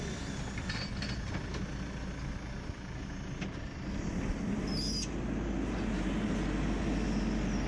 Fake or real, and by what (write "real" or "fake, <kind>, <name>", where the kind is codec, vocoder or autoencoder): real